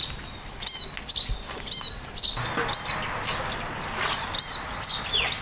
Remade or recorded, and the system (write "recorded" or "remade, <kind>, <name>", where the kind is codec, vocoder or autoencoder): recorded